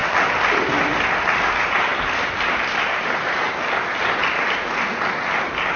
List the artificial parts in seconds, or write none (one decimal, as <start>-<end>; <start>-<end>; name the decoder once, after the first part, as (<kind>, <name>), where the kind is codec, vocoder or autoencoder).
1.9-3.5 (vocoder, BigVGAN v2)